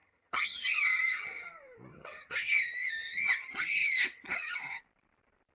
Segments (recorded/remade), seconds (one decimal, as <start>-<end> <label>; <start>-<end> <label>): 0.0-1.5 remade; 1.5-1.9 recorded; 1.9-4.8 remade; 4.8-5.5 recorded